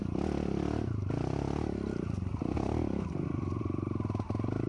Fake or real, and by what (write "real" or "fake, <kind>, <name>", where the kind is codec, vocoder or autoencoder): real